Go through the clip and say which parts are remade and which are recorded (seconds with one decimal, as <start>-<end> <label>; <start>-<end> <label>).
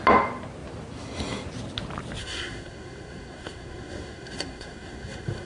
0.0-2.2 recorded; 2.2-5.5 remade